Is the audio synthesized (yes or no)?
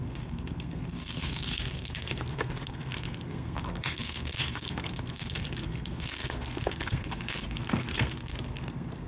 yes